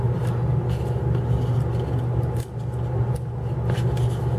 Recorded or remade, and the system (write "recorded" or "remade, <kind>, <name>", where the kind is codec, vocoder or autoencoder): recorded